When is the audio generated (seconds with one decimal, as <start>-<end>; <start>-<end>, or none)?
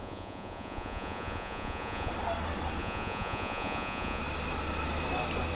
0.0-2.1; 2.8-4.2